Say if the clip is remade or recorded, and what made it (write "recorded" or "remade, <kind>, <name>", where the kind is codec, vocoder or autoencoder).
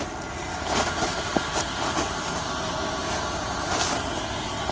remade, vocoder, BigVGAN v2